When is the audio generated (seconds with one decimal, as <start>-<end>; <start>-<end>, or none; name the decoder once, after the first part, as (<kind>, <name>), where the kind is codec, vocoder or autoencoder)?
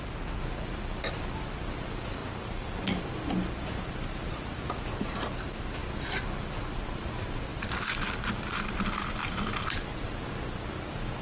none